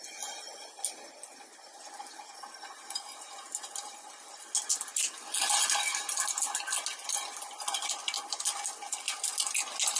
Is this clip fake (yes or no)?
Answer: no